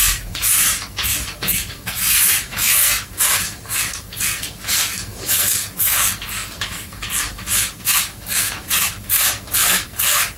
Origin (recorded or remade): remade